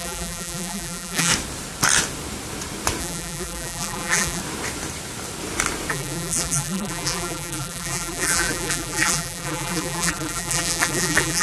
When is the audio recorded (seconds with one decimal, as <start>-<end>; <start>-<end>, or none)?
1.3-3.0; 4.4-5.9